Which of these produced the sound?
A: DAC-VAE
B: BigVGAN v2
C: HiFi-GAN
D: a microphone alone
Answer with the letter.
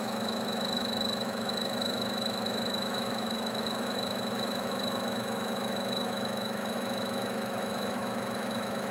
A